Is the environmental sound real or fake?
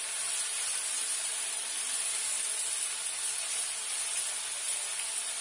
real